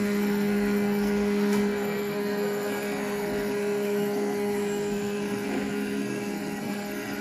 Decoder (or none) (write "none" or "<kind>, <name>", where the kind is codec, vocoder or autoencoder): codec, SNAC